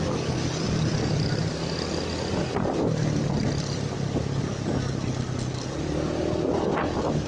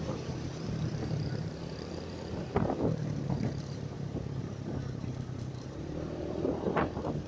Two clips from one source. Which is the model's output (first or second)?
second